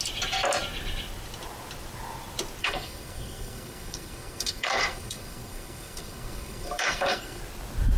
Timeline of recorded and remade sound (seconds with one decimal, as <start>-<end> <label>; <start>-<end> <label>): 0.0-2.6 recorded; 2.6-7.4 remade; 7.4-8.0 recorded